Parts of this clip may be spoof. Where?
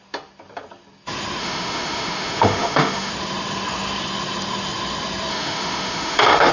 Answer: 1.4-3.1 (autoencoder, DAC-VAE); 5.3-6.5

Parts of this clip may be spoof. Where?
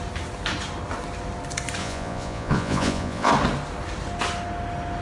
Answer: 1.8-3.3 (vocoder, Vocos)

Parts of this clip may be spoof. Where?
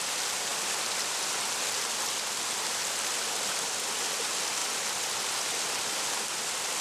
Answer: 0.5-1.3 (vocoder, BigVGAN v2)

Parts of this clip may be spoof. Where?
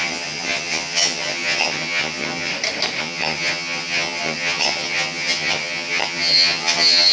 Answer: 0.0-2.5 (vocoder, HiFi-GAN); 3.0-7.1